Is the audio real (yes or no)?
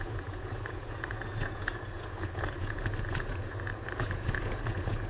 no